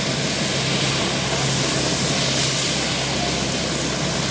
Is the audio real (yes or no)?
yes